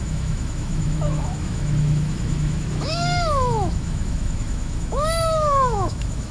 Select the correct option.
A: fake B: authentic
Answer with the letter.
A